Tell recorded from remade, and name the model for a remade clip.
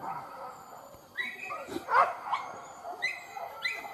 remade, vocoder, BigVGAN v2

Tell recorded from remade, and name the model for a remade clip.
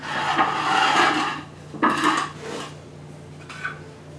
recorded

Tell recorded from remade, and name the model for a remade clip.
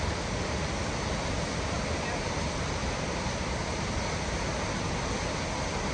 recorded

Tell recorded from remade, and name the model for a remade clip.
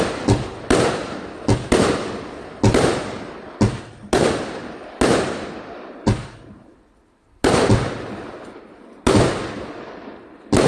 recorded